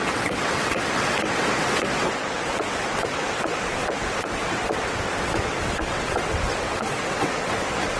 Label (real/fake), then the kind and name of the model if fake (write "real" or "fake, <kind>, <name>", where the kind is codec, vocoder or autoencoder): fake, vocoder, WaveNeXt